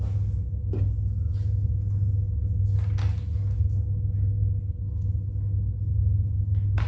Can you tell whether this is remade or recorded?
recorded